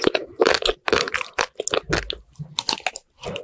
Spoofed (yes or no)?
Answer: no